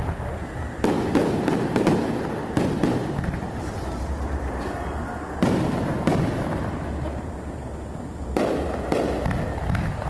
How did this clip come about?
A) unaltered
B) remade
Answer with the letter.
A